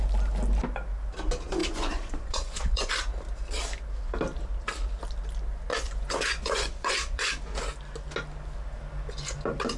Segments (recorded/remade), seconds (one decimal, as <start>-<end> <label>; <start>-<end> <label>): 0.0-1.6 recorded; 1.6-2.9 remade; 2.9-5.7 recorded; 5.7-7.3 remade; 7.3-9.8 recorded